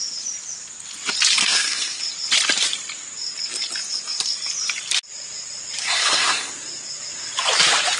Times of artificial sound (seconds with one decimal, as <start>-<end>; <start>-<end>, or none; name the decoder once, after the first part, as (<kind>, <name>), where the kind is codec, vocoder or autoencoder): 1.4-2.0 (codec, SNAC); 5.8-6.5